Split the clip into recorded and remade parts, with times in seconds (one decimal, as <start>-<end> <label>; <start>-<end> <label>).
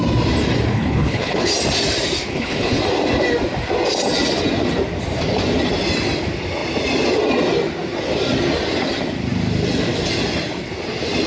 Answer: 0.0-0.7 recorded; 0.7-1.5 remade; 1.5-2.3 recorded; 2.3-2.8 remade; 2.8-11.3 recorded